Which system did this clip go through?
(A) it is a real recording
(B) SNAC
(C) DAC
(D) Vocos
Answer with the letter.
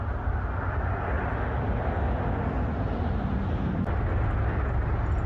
A